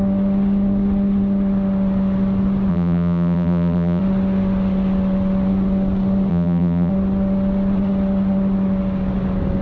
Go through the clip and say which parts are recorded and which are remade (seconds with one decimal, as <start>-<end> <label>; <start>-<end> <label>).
0.0-2.7 recorded; 2.7-4.0 remade; 4.0-6.3 recorded; 6.3-6.9 remade; 6.9-9.6 recorded